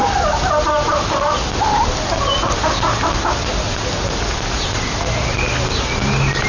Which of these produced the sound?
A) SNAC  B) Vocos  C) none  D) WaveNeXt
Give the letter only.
C